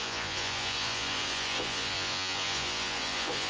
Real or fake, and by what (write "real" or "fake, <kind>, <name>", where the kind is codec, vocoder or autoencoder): fake, vocoder, Vocos